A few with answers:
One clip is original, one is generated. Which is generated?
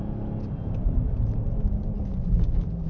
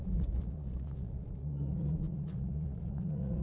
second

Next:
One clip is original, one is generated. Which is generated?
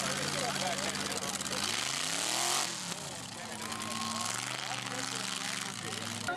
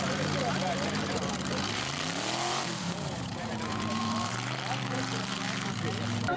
second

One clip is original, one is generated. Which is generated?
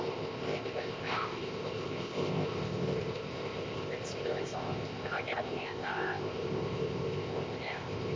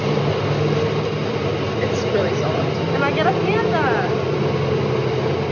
first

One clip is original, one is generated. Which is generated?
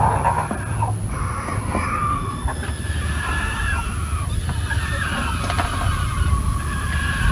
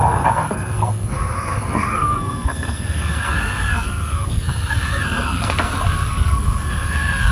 second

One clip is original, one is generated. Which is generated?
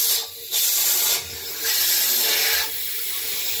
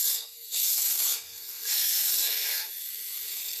second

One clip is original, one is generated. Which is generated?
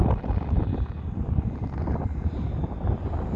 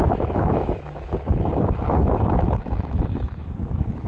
second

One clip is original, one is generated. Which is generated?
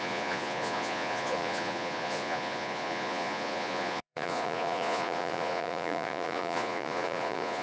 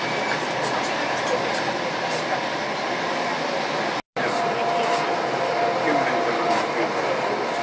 first